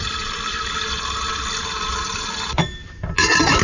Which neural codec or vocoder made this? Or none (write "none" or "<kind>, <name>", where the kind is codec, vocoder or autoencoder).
none